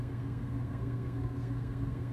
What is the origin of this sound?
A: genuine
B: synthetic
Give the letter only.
B